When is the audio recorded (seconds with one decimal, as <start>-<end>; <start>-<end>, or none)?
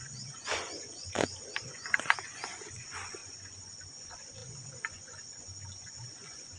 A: none